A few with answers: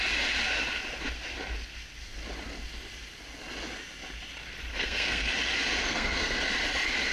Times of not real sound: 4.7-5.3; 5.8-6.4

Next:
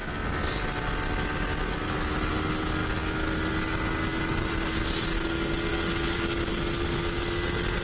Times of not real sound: none

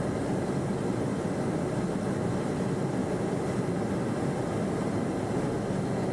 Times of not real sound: none

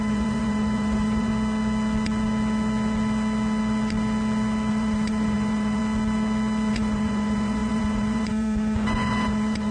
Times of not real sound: 0.0-1.3; 4.7-5.8; 6.7-9.7

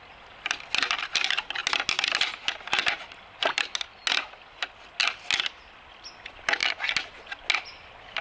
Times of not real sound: none